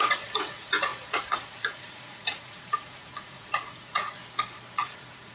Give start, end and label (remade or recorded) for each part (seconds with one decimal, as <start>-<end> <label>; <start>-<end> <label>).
0.0-4.2 remade; 4.2-4.8 recorded; 4.8-5.3 remade